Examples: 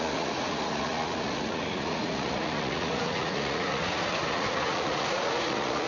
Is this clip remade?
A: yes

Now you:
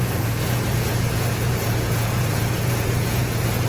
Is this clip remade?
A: yes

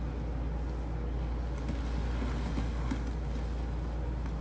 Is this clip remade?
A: no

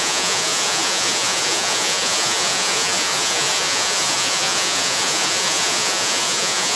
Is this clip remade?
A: yes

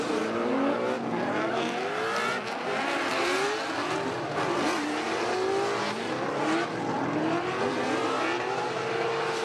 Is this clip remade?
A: no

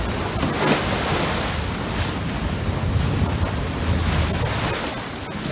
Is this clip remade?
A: no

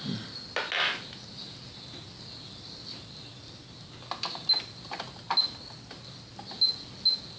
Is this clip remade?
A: no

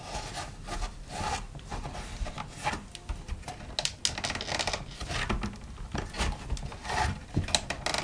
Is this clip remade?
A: no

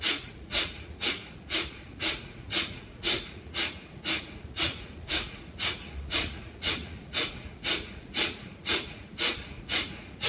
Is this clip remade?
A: yes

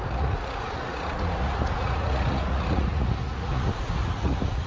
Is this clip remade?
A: yes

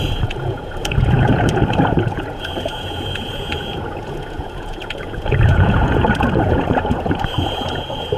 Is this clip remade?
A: yes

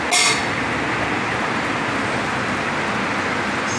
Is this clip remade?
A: no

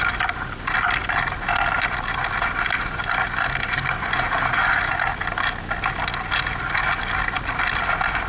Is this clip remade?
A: no